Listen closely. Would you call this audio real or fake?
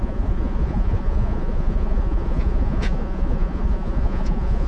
fake